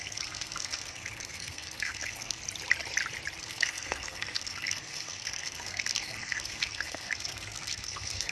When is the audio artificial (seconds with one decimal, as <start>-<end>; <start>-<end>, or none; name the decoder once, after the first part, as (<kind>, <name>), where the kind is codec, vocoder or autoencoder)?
0.0-2.4 (codec, SNAC); 3.4-8.3